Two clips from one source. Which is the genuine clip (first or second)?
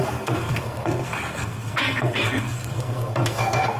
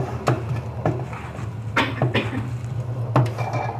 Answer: second